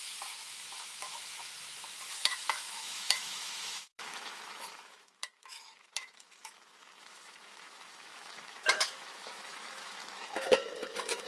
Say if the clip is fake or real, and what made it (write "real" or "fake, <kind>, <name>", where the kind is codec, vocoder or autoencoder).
fake, autoencoder, DAC-VAE